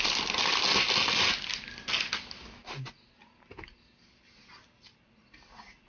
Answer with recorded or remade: recorded